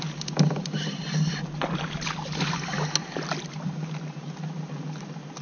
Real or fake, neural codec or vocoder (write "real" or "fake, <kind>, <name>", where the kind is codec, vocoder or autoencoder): real